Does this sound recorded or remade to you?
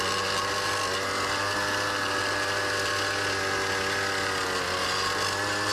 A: recorded